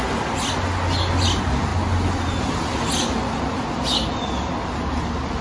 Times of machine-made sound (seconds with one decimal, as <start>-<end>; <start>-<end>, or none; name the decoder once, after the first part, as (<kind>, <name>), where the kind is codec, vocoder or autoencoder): none